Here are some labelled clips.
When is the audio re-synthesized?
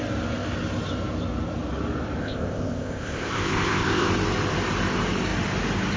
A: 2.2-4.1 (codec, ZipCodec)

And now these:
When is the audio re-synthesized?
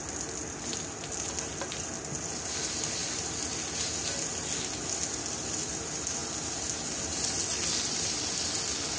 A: none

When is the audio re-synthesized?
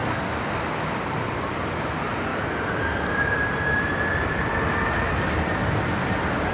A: 1.3-2.3 (vocoder, BigVGAN v2); 3.1-6.5